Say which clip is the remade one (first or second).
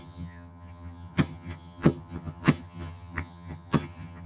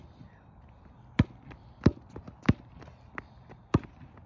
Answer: first